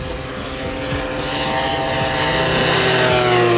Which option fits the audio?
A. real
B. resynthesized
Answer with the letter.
A